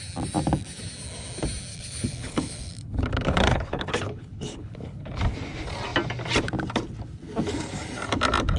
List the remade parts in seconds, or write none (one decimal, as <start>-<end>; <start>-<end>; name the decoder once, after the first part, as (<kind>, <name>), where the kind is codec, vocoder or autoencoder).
1.7-5.2 (codec, HILCodec)